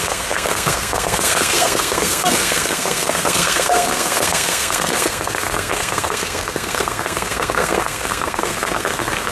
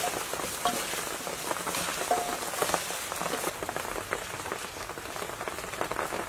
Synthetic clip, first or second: first